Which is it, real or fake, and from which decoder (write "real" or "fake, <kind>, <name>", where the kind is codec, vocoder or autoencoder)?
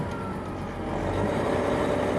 real